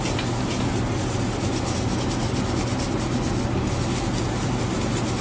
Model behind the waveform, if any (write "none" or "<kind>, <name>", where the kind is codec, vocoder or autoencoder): none